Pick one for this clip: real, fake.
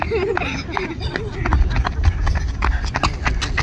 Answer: real